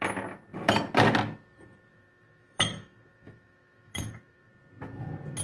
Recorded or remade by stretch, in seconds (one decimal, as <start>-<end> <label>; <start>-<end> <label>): 0.0-1.9 recorded; 1.9-4.5 remade; 4.5-5.4 recorded